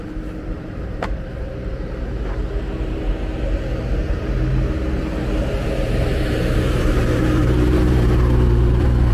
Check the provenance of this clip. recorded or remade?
remade